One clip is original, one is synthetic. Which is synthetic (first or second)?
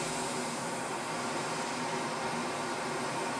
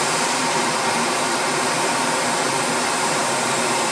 second